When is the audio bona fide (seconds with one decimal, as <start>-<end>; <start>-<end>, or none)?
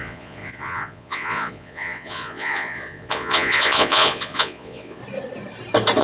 5.0-6.0